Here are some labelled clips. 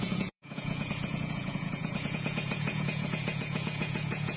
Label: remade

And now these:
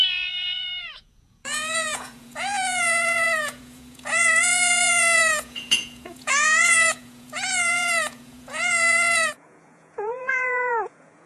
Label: remade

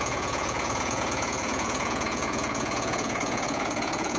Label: remade